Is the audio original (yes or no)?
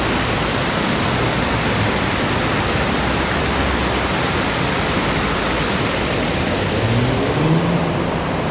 yes